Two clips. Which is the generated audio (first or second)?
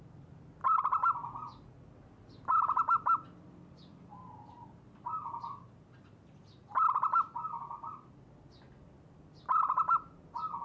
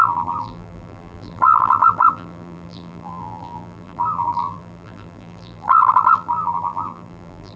second